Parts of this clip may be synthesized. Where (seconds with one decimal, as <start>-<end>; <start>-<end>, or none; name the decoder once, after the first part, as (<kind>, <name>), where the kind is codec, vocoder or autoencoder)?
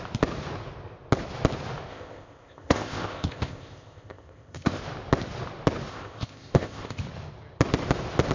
1.9-4.8 (codec, ZipCodec); 5.9-7.0